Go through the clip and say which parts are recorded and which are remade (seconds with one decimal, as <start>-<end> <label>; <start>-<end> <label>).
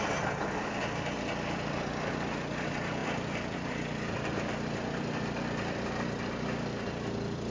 0.0-7.5 recorded